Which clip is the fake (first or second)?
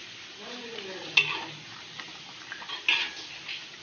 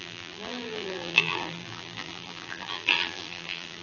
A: second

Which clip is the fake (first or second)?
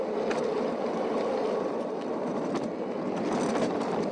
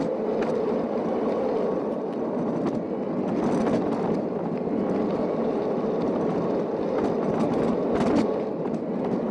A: first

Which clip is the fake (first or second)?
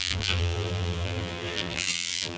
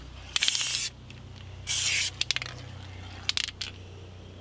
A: first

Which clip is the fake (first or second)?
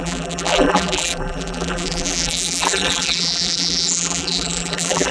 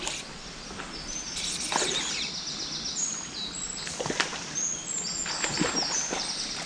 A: first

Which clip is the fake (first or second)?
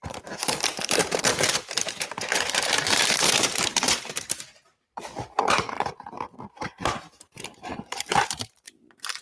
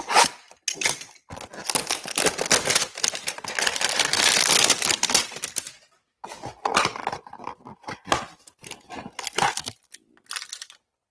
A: first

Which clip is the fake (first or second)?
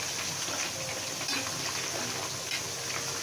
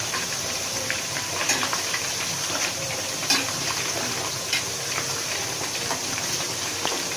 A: second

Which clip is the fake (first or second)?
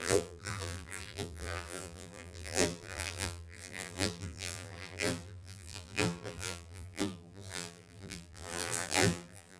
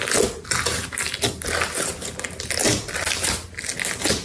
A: first